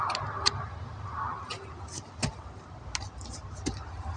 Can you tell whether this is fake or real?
real